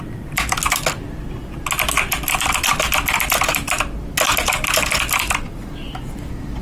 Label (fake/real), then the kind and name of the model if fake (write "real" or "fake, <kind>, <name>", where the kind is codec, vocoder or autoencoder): real